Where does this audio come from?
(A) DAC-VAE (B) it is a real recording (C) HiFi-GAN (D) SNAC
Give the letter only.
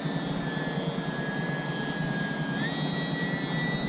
B